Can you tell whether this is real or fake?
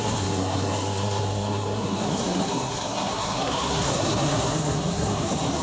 fake